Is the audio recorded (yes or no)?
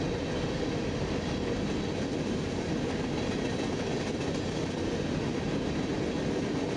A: yes